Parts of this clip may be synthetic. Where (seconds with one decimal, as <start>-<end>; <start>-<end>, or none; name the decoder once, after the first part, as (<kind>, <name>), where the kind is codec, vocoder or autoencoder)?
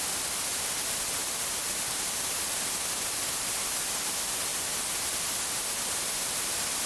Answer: 1.2-1.8 (vocoder, BigVGAN v2)